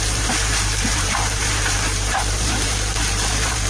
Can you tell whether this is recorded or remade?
remade